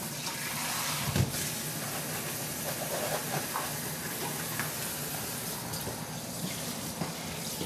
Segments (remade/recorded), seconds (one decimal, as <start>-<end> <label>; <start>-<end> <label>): 0.0-7.7 recorded